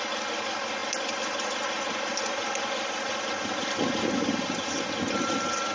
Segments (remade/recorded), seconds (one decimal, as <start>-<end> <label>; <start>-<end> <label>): 0.0-5.7 recorded